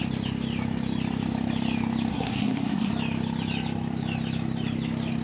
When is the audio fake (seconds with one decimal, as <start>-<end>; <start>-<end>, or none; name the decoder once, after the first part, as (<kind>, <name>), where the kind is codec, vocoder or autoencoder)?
2.1-2.9 (codec, SNAC)